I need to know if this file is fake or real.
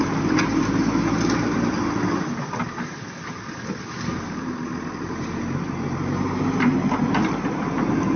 real